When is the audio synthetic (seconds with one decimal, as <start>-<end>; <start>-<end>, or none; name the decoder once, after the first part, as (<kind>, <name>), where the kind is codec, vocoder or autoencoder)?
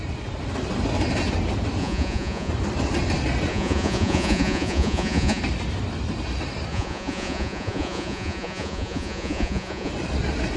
1.8-2.5 (vocoder, Vocos); 3.5-5.4; 6.7-9.9